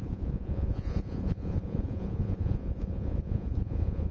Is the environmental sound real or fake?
fake